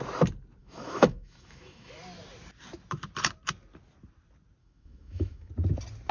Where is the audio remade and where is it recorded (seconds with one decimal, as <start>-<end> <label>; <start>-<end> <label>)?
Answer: 0.0-0.6 recorded; 0.6-1.9 remade; 1.9-4.6 recorded; 4.6-5.5 remade; 5.5-6.1 recorded